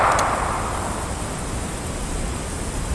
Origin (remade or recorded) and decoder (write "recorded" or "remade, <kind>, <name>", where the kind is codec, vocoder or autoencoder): recorded